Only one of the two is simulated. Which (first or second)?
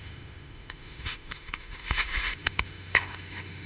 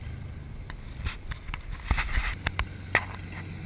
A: first